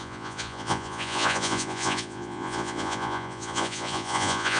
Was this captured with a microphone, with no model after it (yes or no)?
no